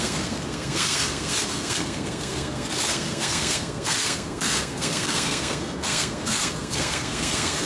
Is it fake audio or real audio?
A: fake